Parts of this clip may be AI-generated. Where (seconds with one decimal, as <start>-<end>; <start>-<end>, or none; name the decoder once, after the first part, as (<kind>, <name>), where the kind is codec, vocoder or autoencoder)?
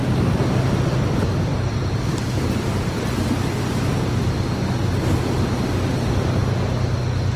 1.5-3.0 (vocoder, BigVGAN v2)